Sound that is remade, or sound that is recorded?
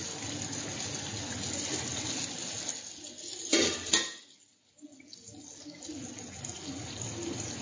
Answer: recorded